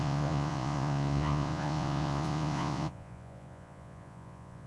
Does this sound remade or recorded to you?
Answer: remade